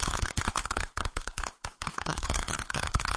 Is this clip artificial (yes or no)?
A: yes